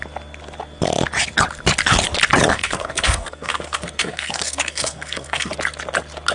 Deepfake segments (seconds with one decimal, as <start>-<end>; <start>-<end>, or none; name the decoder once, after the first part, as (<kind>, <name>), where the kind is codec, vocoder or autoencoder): 2.5-5.5 (codec, SNAC)